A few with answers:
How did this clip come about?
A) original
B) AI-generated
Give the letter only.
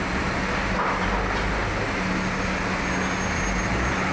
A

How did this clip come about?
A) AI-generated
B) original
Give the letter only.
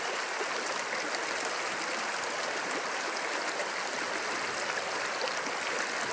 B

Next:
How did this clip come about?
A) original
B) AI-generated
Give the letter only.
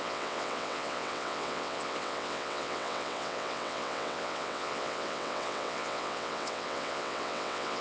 B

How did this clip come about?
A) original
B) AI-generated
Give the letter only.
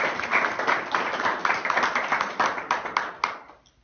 A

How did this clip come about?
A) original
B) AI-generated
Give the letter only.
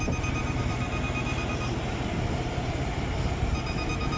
A